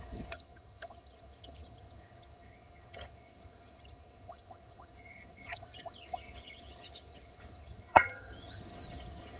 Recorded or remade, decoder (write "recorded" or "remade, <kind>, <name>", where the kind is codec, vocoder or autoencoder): remade, vocoder, HiFi-GAN